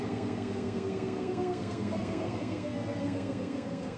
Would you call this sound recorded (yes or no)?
no